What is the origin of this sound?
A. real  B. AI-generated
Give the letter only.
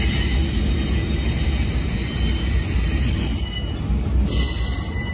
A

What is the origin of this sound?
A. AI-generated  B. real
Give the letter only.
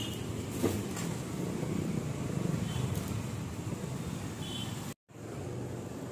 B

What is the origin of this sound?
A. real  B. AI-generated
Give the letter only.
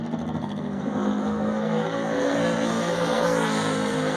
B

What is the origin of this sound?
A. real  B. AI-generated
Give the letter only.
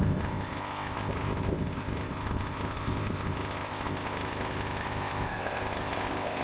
B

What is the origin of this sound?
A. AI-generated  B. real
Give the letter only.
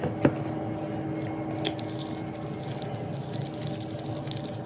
B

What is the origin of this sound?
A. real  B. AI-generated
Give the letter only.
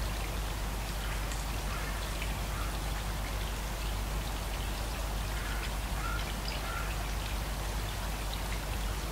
A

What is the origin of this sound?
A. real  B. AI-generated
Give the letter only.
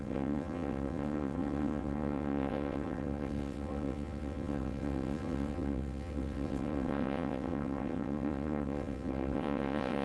B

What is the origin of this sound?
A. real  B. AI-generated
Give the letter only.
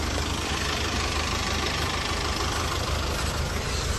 B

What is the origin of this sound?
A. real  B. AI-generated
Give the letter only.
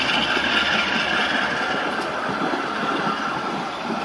A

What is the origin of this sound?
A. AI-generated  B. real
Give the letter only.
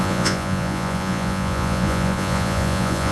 A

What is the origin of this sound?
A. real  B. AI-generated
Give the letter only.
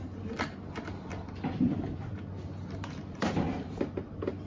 A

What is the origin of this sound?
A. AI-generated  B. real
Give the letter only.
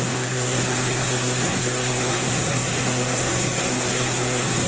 A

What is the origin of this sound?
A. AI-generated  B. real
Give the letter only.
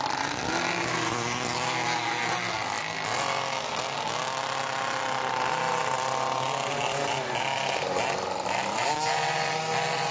B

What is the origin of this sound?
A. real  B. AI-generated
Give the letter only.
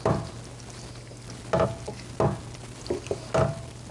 A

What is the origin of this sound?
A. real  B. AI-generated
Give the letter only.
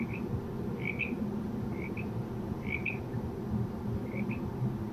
A